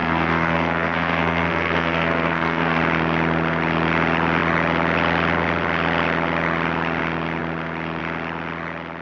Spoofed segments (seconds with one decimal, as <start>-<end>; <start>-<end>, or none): 0.0-2.8